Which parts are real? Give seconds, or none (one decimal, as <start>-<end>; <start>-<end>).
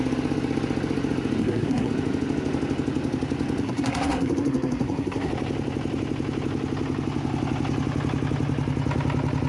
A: 0.0-1.4; 1.9-3.6; 5.3-9.5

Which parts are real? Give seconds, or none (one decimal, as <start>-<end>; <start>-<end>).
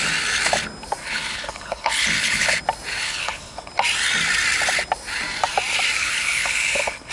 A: 0.0-1.0; 2.6-3.0; 3.7-6.0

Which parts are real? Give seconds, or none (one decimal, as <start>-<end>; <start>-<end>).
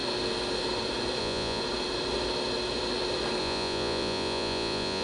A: 0.0-1.2; 1.6-3.4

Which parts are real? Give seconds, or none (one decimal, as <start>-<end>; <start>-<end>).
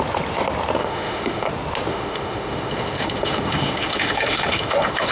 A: 0.0-0.8; 1.5-1.9